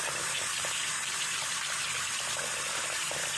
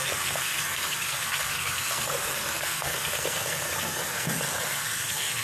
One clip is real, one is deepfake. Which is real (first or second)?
first